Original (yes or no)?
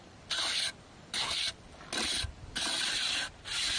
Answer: yes